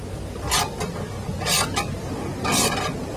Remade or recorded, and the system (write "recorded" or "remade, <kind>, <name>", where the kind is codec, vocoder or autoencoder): recorded